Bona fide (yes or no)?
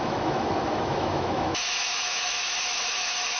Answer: no